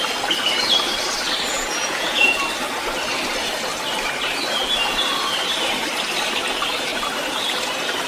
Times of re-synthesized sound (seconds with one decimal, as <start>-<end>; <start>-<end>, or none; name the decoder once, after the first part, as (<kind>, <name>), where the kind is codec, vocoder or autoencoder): 1.5-2.4 (vocoder, Vocos)